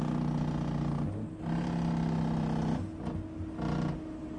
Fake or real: real